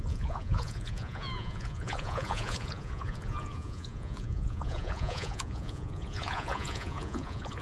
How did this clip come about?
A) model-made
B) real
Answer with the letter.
A